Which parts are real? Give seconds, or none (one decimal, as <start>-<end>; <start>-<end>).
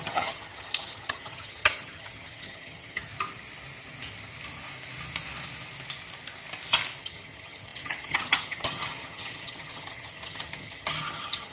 3.1-7.0